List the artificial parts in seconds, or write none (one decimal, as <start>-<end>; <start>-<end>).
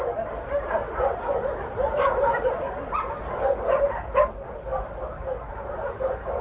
none